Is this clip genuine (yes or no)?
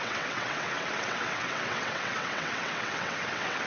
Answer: no